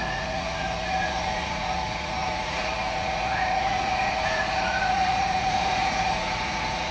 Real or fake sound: fake